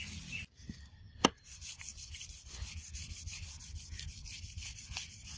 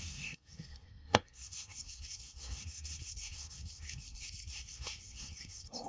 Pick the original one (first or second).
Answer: first